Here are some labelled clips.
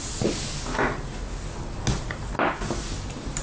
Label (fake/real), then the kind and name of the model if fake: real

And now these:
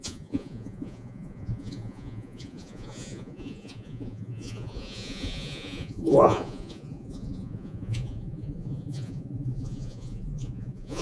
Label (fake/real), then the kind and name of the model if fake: fake, vocoder, Vocos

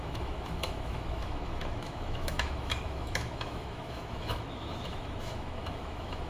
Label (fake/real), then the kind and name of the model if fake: fake, autoencoder, DAC-VAE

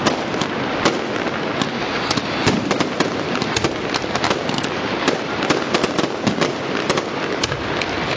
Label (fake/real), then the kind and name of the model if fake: real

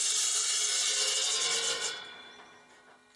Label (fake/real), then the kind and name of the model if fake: real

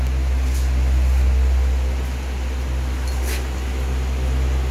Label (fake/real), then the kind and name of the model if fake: real